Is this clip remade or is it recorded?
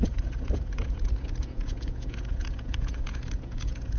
remade